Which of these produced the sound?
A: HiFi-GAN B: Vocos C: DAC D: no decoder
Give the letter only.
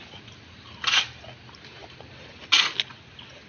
D